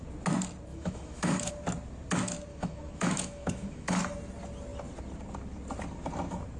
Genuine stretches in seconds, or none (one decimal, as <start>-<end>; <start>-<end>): 0.0-0.7; 1.5-2.5; 4.0-6.6

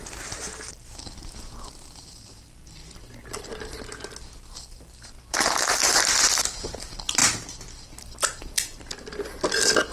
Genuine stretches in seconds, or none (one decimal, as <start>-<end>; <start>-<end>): 0.0-9.9

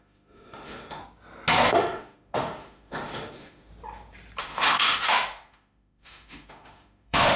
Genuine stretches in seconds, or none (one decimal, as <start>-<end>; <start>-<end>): 1.0-1.7; 3.7-4.4